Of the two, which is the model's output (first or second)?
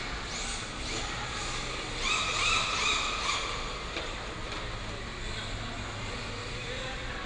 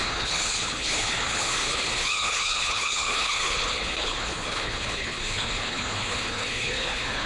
second